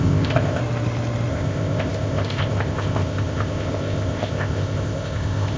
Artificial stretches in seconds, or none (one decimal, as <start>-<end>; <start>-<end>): 0.0-0.6; 1.3-5.6